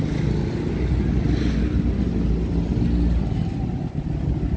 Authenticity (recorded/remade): recorded